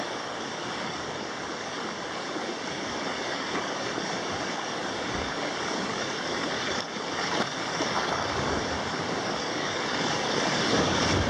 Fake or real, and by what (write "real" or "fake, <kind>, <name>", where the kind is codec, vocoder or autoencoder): fake, codec, DAC